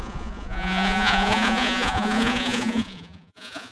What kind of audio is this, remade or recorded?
remade